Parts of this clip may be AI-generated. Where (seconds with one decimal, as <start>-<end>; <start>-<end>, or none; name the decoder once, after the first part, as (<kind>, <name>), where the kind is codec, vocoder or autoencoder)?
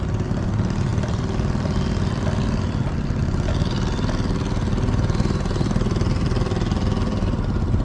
none